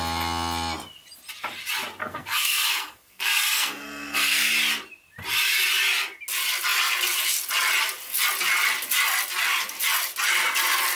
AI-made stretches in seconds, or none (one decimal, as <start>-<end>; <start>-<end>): 2.0-4.5